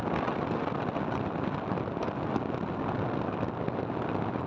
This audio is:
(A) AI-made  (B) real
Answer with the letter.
B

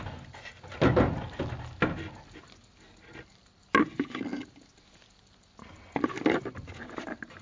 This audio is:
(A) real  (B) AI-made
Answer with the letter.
A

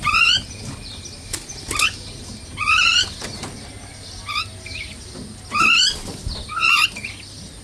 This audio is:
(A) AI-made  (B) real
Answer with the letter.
B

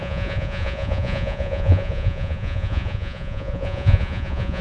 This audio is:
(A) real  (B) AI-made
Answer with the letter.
B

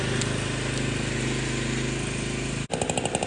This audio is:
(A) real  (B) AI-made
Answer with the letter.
A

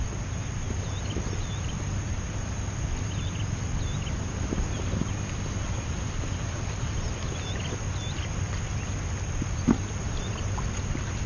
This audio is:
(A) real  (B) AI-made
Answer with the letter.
A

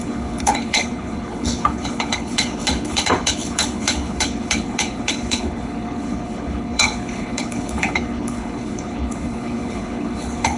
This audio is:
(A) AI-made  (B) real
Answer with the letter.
A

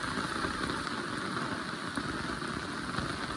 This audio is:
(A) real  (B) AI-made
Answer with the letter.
A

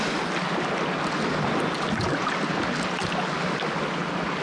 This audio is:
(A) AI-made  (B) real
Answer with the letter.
B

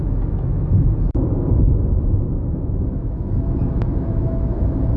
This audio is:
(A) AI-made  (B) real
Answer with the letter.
A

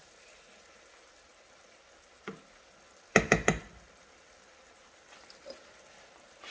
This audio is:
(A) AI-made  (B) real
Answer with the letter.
B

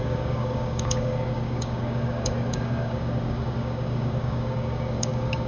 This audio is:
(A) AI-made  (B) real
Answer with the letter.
A